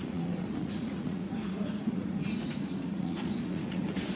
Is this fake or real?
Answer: fake